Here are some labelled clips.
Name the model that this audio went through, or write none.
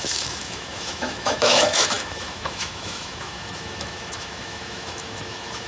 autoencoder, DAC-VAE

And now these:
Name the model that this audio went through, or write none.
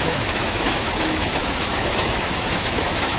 autoencoder, DAC-VAE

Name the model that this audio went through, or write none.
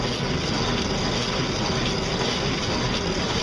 none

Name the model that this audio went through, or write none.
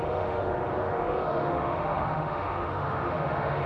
autoencoder, DAC-VAE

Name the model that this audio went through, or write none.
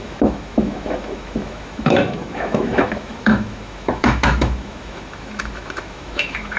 autoencoder, DAC-VAE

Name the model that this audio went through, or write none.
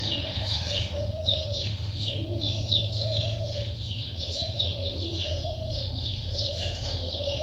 autoencoder, DAC-VAE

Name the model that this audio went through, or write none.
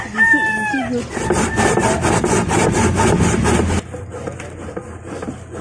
none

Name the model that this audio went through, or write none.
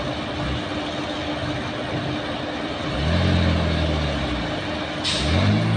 none